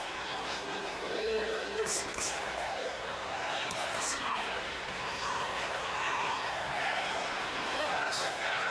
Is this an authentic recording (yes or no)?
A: no